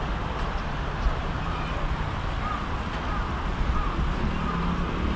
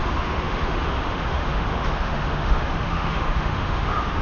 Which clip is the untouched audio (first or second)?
first